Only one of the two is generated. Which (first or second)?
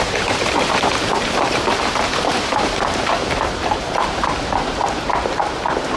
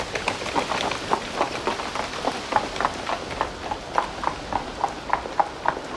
first